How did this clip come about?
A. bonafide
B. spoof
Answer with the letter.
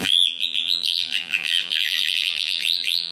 B